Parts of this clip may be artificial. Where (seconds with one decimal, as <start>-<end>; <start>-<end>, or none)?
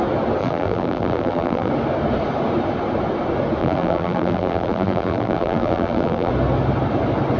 0.4-1.7; 3.6-6.3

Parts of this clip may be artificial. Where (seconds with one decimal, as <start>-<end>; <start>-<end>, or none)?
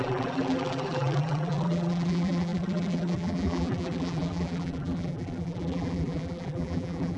0.0-7.2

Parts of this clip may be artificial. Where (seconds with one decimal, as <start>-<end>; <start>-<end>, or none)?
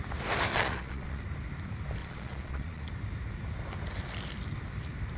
0.5-1.2; 2.0-2.9